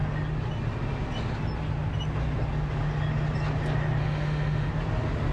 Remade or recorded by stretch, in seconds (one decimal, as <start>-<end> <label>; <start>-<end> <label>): 0.0-4.0 recorded; 4.0-4.7 remade; 4.7-5.3 recorded